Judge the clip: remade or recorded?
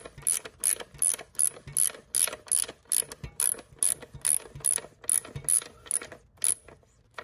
recorded